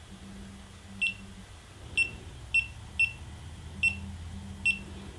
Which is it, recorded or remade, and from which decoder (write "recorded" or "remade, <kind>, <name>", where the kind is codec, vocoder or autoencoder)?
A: recorded